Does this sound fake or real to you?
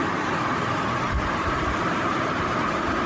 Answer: fake